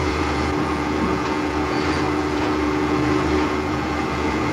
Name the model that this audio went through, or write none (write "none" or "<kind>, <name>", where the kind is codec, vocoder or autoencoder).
vocoder, Vocos